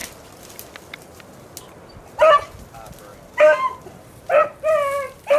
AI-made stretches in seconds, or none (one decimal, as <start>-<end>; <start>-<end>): 2.7-3.1; 3.8-4.4